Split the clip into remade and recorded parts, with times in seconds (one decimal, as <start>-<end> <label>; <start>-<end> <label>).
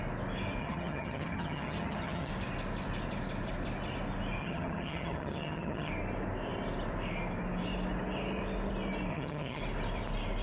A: 0.0-0.6 recorded; 0.6-2.3 remade; 2.3-4.4 recorded; 4.4-5.9 remade; 5.9-9.1 recorded; 9.1-9.6 remade; 9.6-10.4 recorded